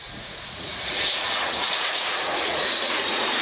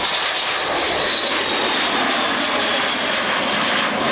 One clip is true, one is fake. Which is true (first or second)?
second